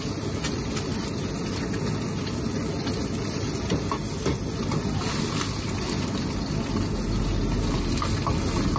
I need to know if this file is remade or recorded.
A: recorded